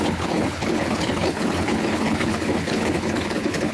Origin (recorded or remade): remade